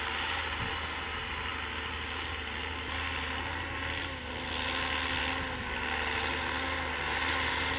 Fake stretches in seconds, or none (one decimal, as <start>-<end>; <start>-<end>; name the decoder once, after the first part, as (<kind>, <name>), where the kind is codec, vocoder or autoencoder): none